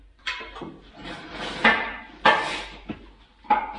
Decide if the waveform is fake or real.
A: real